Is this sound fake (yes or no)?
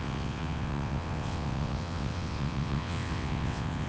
yes